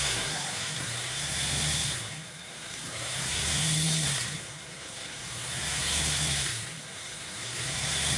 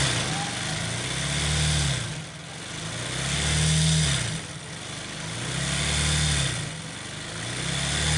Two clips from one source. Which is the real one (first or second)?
second